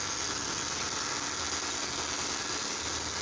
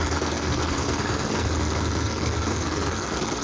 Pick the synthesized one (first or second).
second